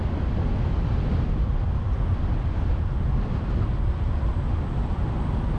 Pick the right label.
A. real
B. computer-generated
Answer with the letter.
A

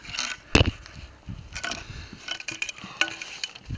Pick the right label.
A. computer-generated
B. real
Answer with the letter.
B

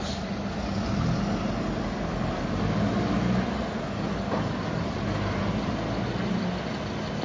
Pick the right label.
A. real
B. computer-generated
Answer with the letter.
A